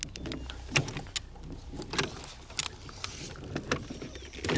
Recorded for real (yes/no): yes